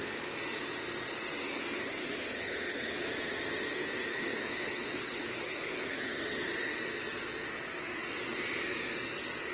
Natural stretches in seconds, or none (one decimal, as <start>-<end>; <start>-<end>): 0.0-2.0; 3.1-4.1; 6.2-9.5